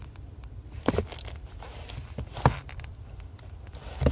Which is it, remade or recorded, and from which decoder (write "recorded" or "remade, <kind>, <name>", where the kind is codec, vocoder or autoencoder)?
recorded